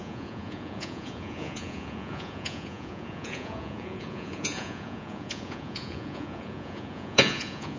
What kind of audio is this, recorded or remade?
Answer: remade